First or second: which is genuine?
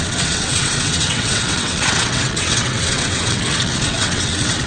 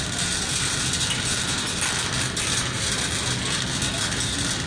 second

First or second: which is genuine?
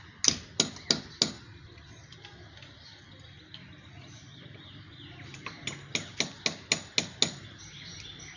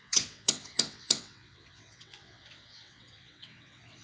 first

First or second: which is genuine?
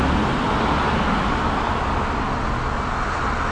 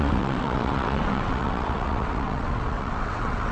first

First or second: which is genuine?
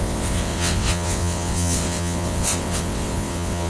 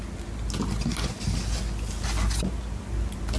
second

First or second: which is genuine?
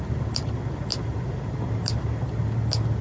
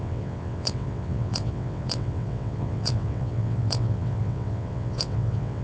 first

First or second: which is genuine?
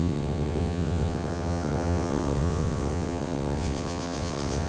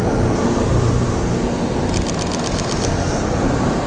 second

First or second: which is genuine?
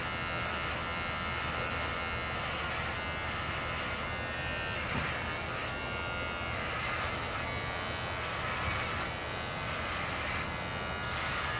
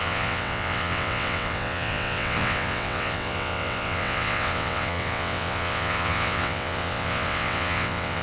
first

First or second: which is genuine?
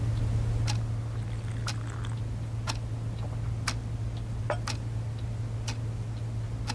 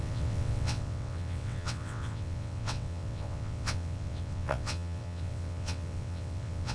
first